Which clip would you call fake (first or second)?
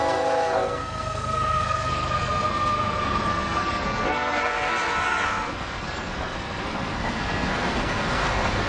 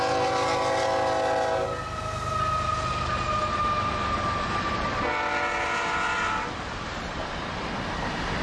first